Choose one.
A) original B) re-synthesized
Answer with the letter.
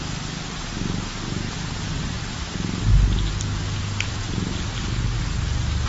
A